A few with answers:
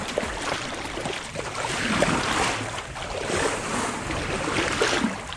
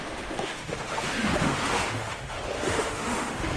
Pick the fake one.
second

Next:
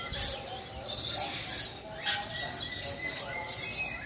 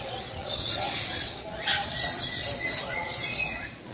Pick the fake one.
second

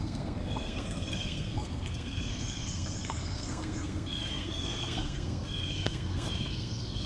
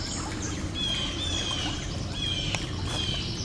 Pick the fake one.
first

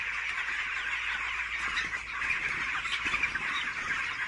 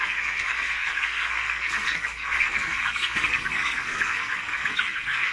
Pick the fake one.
second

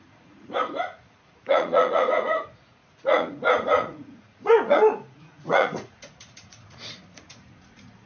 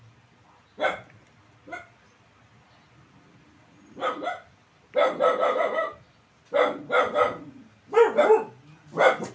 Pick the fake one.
first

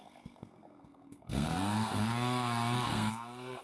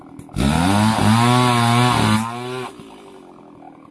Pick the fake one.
first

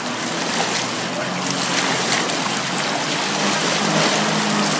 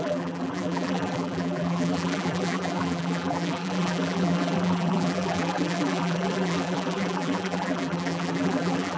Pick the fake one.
second